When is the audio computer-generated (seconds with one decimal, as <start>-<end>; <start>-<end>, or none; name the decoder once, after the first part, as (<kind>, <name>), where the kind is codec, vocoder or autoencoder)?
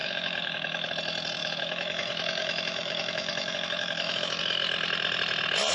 0.0-0.9 (autoencoder, DAC-VAE); 1.4-4.4